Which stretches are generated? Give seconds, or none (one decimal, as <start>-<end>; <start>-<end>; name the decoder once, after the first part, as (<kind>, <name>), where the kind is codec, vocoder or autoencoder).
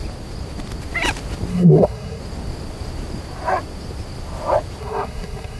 1.5-2.2 (codec, SNAC); 4.8-5.6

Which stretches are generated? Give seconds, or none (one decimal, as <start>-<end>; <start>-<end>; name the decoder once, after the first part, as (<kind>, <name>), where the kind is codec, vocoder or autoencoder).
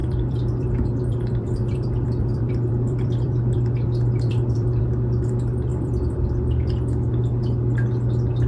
0.0-4.8 (vocoder, BigVGAN v2); 5.7-6.3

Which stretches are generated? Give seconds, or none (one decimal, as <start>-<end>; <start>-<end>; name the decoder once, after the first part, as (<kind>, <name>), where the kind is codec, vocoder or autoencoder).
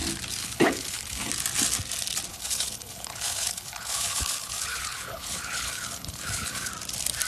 0.4-1.3 (codec, HILCodec); 2.3-6.7